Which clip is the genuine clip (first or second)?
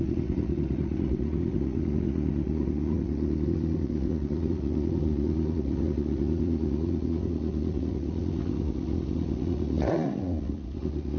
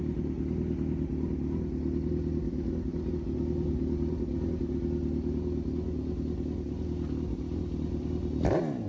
second